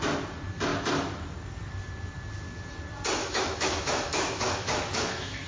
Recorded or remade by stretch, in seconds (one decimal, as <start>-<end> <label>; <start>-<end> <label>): 0.0-3.2 recorded; 3.2-5.5 remade